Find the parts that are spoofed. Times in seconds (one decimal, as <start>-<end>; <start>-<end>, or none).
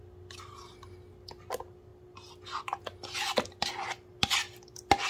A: none